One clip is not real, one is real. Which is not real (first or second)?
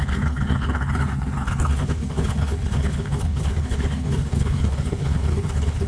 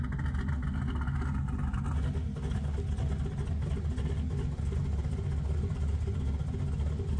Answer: first